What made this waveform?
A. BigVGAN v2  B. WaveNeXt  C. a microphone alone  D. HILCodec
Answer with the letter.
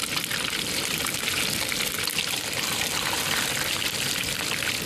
A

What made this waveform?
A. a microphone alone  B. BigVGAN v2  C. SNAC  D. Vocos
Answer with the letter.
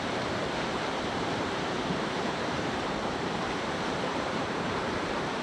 B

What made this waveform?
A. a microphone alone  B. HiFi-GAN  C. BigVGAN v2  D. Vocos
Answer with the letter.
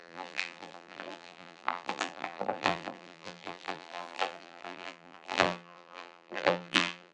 C